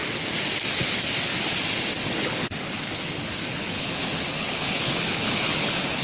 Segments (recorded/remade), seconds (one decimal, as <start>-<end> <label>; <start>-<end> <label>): 0.0-2.0 recorded; 2.0-6.0 remade